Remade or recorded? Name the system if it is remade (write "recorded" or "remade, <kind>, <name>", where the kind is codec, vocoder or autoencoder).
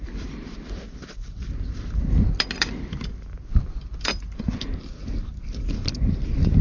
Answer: remade, vocoder, BigVGAN v2